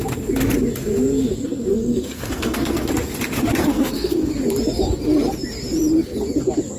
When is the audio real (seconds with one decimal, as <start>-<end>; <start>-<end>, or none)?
0.0-1.7; 2.9-3.6; 4.3-6.8

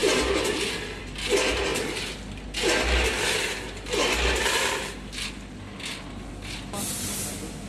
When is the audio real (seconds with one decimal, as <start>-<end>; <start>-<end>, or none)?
0.0-7.7

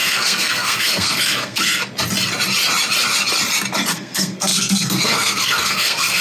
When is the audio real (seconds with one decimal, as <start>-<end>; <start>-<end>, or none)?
1.8-3.9

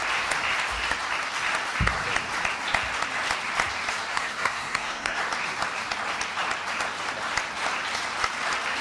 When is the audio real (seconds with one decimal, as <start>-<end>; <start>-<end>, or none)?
0.0-4.1; 5.2-8.8

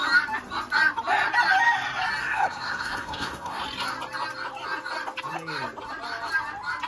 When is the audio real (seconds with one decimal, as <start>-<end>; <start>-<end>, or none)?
0.0-2.2; 3.6-6.9

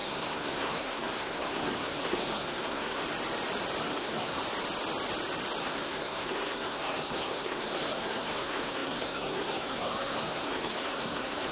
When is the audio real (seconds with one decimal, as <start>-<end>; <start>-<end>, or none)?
3.0-3.8; 4.4-5.6

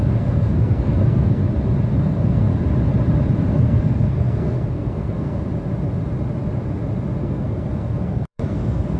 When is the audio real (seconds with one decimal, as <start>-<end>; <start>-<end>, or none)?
1.4-2.0; 2.5-3.5; 5.5-7.2

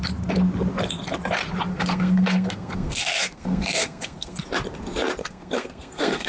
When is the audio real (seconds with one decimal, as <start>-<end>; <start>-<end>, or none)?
0.0-1.7; 4.4-5.2